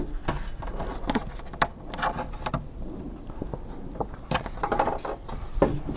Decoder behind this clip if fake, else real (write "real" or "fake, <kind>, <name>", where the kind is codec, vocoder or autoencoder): real